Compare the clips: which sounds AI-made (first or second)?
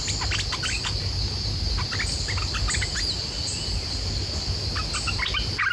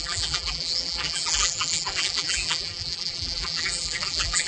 second